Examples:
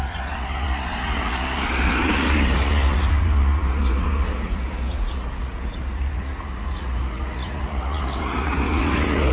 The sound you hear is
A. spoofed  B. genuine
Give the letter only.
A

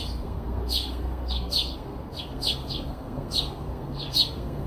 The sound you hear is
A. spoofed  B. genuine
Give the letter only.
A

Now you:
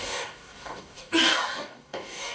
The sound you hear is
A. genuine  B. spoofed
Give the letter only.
B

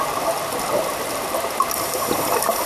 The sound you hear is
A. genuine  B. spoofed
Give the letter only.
A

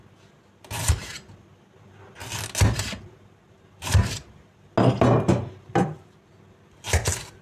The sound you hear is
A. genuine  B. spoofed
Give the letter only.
A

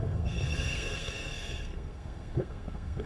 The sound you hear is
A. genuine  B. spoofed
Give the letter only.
B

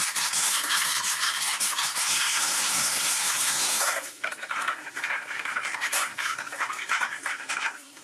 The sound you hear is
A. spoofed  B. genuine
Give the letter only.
A